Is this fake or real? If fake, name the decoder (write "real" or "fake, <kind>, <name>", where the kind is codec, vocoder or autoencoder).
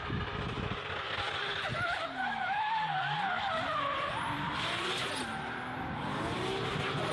real